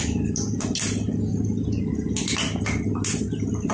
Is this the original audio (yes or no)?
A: yes